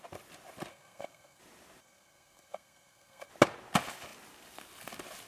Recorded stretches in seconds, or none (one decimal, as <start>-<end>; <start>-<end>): 0.0-0.7; 1.4-1.8; 3.3-5.3